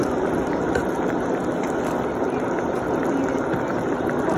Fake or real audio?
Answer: real